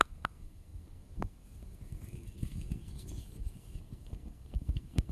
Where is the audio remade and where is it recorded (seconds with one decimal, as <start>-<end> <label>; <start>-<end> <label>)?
0.0-5.1 remade